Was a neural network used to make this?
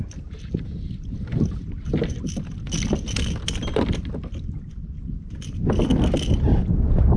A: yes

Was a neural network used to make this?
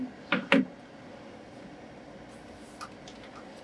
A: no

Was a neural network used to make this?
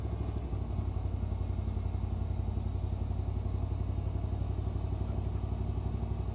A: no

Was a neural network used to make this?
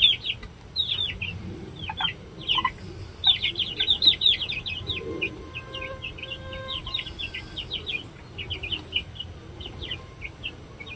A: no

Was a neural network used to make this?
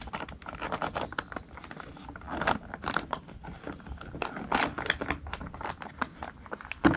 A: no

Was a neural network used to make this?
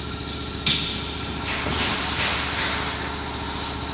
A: no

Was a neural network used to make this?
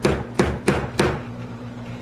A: yes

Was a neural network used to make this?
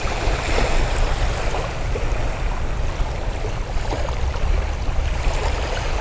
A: yes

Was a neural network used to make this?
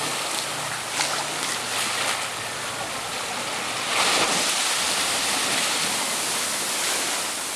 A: no